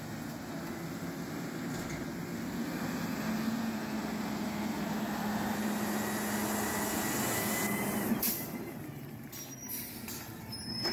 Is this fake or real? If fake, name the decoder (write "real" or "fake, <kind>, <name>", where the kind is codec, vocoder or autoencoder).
real